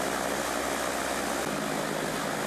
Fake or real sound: real